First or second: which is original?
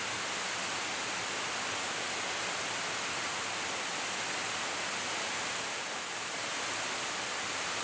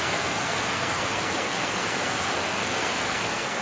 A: first